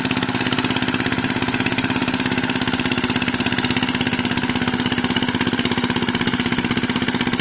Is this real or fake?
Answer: real